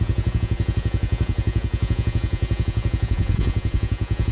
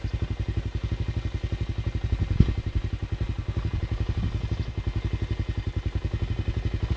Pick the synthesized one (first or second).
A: first